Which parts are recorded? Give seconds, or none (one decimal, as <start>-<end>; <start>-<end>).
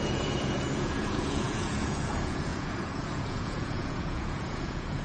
none